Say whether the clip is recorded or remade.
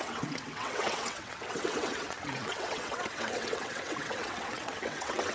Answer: remade